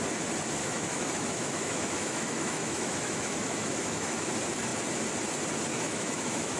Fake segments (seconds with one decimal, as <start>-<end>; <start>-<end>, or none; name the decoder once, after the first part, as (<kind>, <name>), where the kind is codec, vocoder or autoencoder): 0.6-4.3 (autoencoder, DAC-VAE); 5.7-6.6